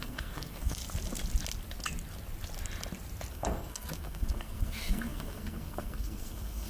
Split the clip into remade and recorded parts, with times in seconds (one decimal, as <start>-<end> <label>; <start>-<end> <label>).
0.0-0.8 remade; 0.8-3.3 recorded; 3.3-6.7 remade